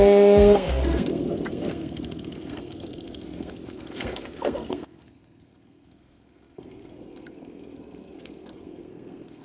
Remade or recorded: remade